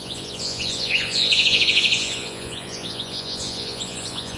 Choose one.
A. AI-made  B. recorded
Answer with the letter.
A